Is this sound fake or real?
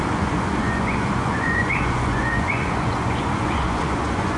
fake